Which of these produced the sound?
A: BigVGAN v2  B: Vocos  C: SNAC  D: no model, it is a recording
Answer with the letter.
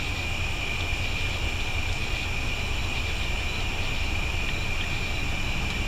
D